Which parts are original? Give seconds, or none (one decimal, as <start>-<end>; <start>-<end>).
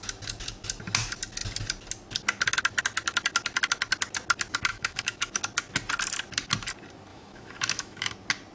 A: 0.0-4.7; 5.4-7.1; 8.1-8.5